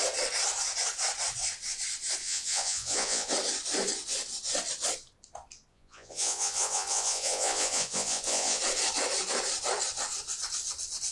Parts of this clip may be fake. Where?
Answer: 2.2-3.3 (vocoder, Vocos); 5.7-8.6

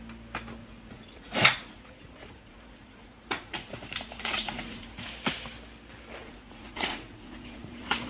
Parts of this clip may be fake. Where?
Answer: 0.6-5.1 (vocoder, Vocos); 6.2-8.1

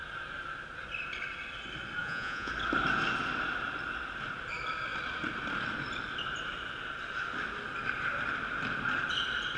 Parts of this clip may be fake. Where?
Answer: 2.0-2.5 (vocoder, Vocos)